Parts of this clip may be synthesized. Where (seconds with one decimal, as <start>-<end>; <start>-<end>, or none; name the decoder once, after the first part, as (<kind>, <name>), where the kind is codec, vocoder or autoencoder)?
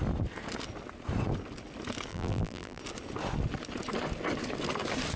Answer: 2.1-2.8 (vocoder, BigVGAN v2)